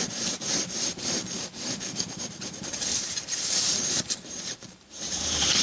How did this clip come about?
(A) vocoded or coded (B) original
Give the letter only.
A